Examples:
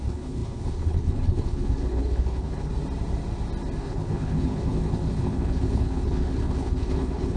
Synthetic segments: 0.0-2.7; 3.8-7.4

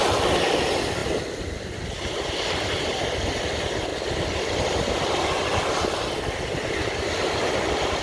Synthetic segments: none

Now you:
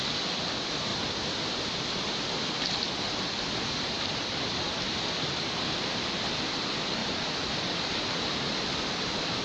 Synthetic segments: none

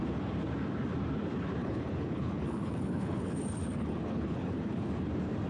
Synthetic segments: 1.6-4.9

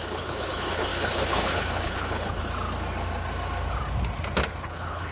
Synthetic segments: 0.0-2.5; 4.6-5.1

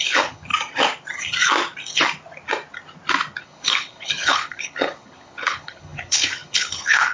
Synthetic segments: 0.0-0.5; 3.4-7.1